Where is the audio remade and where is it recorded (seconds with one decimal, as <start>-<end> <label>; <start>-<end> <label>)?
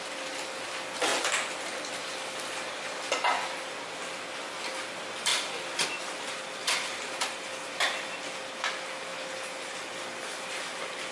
0.0-11.1 recorded